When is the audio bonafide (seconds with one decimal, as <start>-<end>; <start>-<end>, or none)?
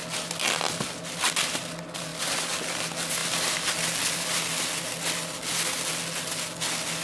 0.0-7.0